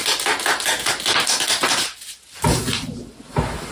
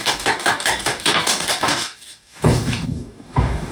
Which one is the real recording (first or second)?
first